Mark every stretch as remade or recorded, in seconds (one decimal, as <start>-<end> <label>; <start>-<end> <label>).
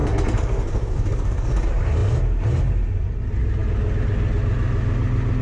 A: 0.0-1.6 remade; 1.6-5.4 recorded